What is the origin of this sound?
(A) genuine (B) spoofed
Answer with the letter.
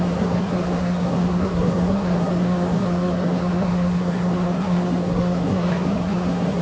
B